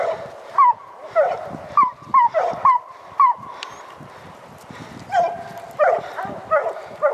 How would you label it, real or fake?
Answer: real